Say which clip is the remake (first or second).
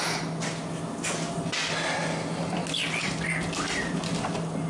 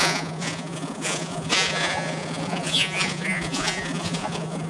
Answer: second